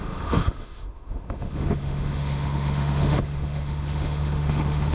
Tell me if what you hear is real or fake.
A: fake